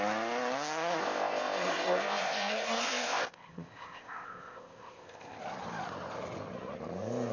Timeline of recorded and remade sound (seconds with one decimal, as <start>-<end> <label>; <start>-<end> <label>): 0.0-1.0 recorded; 1.0-5.4 remade; 5.4-7.3 recorded